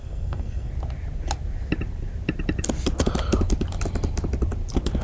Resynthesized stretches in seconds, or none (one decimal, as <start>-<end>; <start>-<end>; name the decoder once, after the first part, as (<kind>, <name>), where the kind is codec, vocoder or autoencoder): 0.0-0.7 (codec, SNAC)